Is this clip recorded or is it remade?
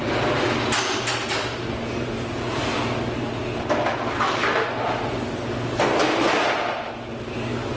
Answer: recorded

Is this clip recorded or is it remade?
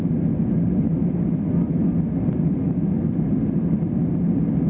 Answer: recorded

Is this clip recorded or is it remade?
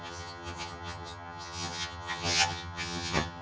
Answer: remade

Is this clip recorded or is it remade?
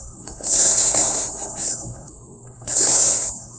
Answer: remade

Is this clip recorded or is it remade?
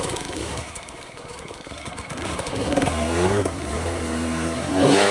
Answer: remade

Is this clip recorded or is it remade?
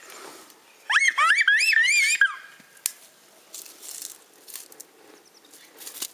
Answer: recorded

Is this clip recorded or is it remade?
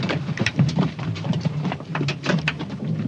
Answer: remade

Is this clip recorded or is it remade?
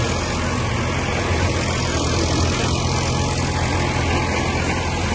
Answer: recorded